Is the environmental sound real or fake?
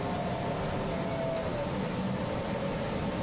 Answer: real